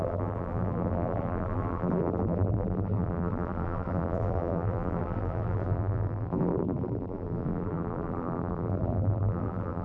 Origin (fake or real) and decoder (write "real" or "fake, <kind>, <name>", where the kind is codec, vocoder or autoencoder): fake, vocoder, BigVGAN v2